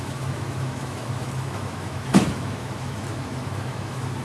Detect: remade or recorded remade